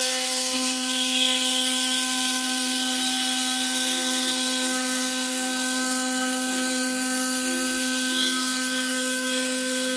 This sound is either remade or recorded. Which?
remade